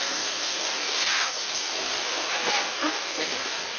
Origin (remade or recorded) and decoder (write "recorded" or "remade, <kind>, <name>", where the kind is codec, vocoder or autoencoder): remade, codec, DAC